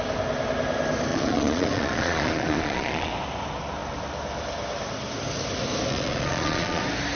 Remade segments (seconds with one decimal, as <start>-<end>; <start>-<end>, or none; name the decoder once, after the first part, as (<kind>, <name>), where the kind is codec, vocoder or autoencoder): 1.1-3.1 (vocoder, Vocos); 5.9-6.8